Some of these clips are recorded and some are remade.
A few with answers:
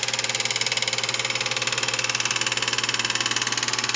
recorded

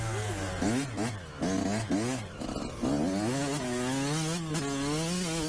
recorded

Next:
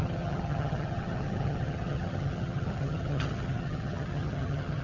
remade